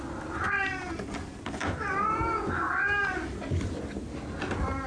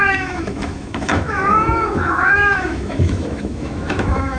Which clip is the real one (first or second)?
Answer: first